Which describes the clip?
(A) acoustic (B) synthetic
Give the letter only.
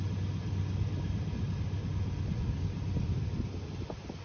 A